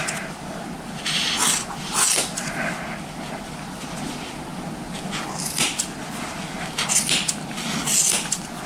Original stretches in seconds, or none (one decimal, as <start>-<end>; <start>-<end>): 0.0-8.7